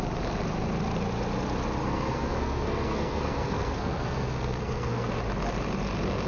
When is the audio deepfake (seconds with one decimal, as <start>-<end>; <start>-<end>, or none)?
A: 1.8-5.2